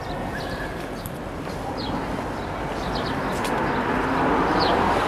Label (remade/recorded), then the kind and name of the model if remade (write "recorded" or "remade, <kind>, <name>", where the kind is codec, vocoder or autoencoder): recorded